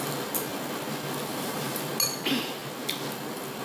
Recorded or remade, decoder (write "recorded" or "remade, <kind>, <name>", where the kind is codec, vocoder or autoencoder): recorded